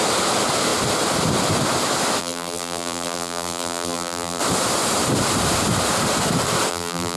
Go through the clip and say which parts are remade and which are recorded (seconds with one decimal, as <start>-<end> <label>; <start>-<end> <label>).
0.0-2.2 recorded; 2.2-4.4 remade; 4.4-6.7 recorded; 6.7-7.2 remade